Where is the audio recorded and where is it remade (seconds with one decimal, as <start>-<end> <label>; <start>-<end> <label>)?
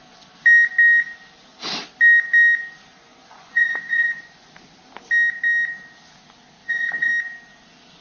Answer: 0.0-2.9 recorded; 2.9-4.5 remade; 4.5-6.6 recorded; 6.6-7.1 remade; 7.1-8.0 recorded